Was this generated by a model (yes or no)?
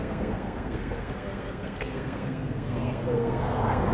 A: yes